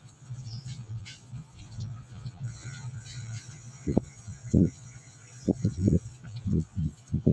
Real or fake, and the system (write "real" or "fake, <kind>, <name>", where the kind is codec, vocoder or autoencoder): fake, vocoder, Vocos